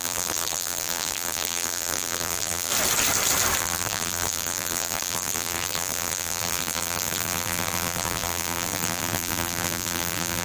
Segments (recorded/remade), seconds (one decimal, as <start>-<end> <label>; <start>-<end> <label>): 0.0-2.7 remade; 2.7-3.6 recorded; 3.6-10.4 remade